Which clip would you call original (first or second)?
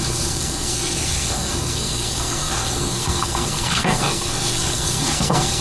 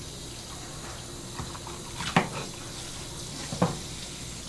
second